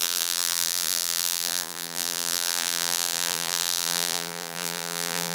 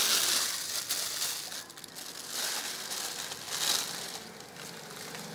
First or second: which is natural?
second